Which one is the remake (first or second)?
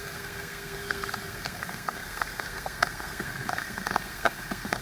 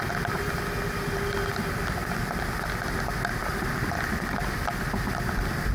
first